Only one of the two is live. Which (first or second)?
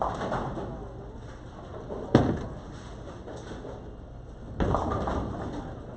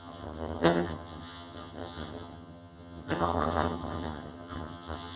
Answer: first